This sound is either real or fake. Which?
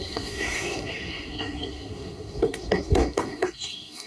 fake